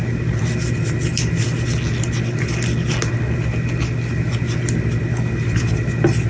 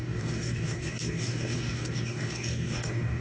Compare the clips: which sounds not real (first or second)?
second